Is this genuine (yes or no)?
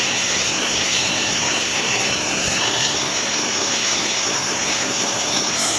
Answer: no